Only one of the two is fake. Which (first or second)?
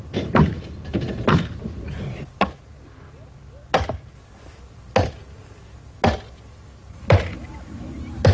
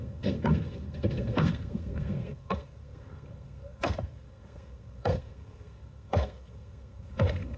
second